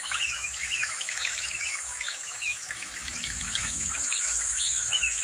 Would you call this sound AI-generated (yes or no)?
yes